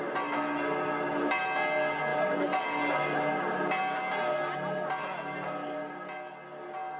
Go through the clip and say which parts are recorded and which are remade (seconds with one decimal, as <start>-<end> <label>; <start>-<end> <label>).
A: 0.0-7.0 recorded